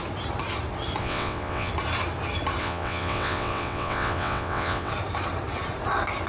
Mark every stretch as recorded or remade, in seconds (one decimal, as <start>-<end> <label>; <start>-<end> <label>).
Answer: 0.0-1.0 recorded; 1.0-1.7 remade; 1.7-2.6 recorded; 2.6-4.9 remade; 4.9-6.3 recorded